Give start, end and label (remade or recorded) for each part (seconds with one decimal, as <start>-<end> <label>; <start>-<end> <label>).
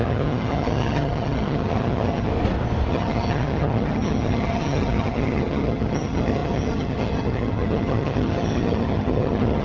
0.0-2.3 remade; 2.3-2.9 recorded; 2.9-9.6 remade